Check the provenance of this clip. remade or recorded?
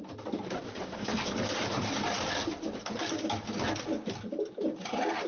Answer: recorded